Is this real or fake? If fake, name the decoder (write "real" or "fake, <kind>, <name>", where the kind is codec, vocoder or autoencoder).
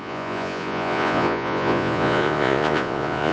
fake, vocoder, Vocos